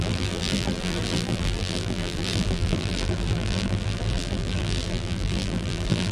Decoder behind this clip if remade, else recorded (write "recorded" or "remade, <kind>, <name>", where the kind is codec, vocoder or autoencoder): remade, vocoder, BigVGAN v2